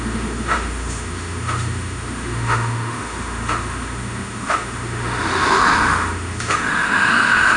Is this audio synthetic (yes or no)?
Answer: yes